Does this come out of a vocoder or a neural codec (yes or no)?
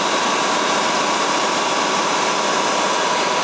no